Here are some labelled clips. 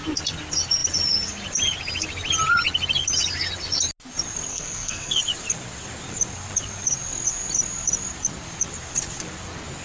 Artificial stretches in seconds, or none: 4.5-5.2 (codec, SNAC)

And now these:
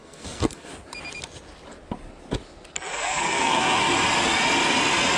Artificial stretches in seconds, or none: 0.0-0.7 (codec, SNAC); 2.9-3.8

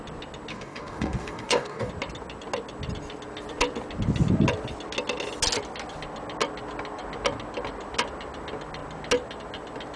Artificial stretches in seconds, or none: 0.5-1.9 (codec, DAC)